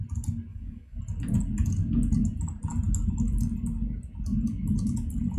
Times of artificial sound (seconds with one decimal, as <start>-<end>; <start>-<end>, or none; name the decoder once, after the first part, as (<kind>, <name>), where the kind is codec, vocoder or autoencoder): 0.5-1.0 (codec, DAC)